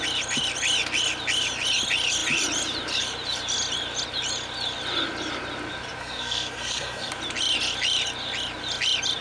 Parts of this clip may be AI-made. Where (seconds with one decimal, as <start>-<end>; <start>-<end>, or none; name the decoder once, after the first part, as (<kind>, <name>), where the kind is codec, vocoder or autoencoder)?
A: 6.0-7.1 (codec, SNAC)